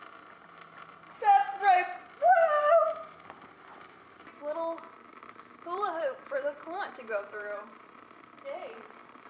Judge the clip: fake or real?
fake